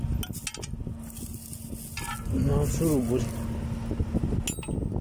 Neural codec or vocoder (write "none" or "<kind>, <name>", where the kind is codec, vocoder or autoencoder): none